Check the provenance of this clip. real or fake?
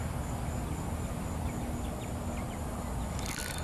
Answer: real